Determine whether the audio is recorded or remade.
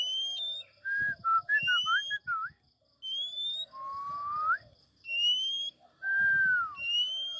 recorded